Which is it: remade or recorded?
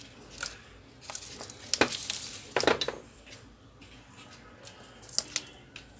recorded